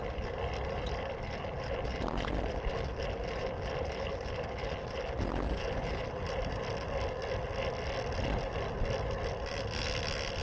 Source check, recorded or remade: recorded